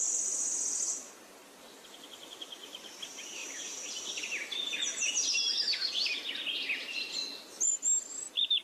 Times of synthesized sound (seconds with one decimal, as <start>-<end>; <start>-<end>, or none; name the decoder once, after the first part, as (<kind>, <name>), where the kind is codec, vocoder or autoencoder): 3.4-6.2 (vocoder, BigVGAN v2)